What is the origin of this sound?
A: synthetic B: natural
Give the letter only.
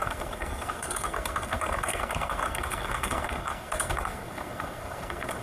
A